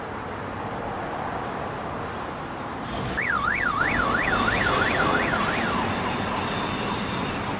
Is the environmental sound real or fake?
real